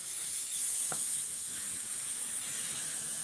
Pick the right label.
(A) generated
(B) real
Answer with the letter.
A